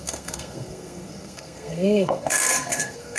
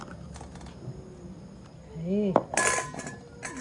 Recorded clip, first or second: second